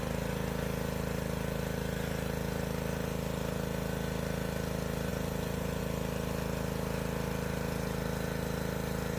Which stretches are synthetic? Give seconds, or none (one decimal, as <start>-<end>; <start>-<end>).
5.1-5.8

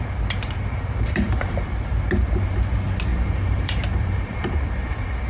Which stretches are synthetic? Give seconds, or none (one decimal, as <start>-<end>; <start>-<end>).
0.7-1.7; 3.1-5.3

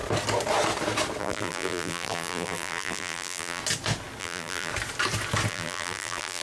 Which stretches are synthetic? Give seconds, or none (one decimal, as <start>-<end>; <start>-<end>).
1.2-3.6; 4.2-4.7; 5.5-6.4

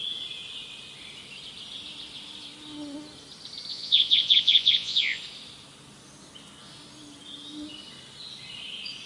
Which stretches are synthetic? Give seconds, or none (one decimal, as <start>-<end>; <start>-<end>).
3.7-5.2

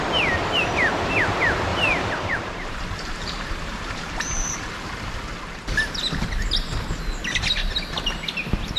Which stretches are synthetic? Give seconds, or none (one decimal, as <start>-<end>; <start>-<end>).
1.7-4.5

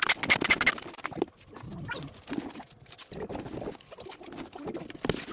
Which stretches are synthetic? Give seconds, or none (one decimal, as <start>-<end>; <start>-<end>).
none

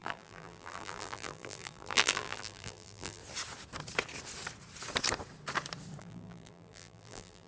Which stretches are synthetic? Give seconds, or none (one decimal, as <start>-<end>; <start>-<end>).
0.0-3.2; 6.0-7.5